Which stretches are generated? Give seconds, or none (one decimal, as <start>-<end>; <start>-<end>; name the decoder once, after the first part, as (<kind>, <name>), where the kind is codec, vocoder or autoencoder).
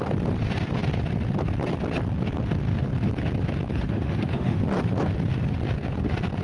3.7-4.6 (autoencoder, DAC-VAE)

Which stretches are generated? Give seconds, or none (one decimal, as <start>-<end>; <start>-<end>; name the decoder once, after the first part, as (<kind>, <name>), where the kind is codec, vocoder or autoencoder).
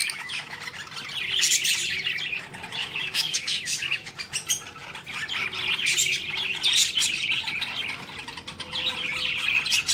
0.0-0.6 (autoencoder, DAC-VAE); 2.8-4.1